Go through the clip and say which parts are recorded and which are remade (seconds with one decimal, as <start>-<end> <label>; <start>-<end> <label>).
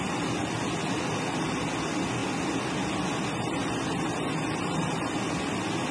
0.0-5.9 recorded